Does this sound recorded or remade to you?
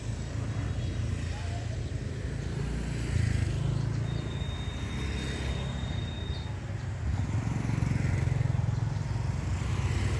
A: recorded